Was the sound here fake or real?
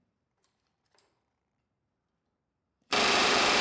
fake